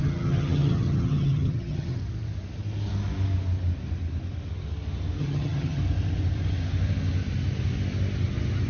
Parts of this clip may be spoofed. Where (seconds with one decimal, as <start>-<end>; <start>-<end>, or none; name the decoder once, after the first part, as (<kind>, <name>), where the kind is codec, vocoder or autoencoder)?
0.0-2.0 (vocoder, HiFi-GAN); 5.2-5.8